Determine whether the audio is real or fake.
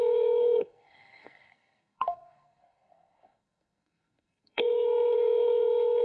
fake